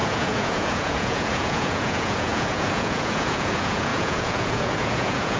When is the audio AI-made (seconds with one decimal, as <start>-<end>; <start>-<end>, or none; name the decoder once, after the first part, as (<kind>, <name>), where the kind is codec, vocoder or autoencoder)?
0.0-5.4 (vocoder, Vocos)